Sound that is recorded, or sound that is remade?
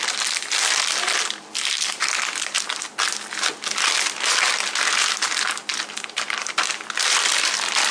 recorded